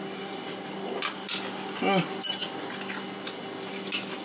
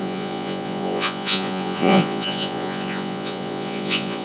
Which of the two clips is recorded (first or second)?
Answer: first